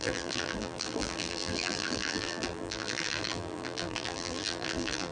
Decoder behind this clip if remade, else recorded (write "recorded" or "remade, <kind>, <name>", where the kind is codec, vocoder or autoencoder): remade, vocoder, BigVGAN v2